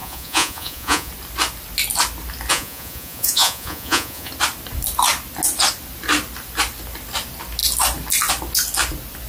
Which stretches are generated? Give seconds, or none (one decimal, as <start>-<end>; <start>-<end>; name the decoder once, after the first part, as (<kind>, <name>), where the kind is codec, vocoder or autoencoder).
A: 0.0-1.1 (vocoder, Vocos); 2.5-4.3